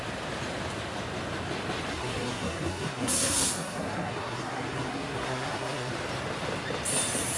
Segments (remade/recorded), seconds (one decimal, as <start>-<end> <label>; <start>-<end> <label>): 0.0-1.9 recorded; 1.9-5.9 remade; 5.9-7.4 recorded